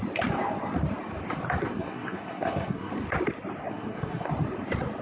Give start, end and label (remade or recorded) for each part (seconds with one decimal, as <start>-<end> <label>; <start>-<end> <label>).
0.0-1.6 recorded; 1.6-2.9 remade; 2.9-3.7 recorded; 3.7-4.3 remade; 4.3-5.0 recorded